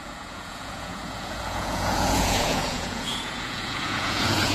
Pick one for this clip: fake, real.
fake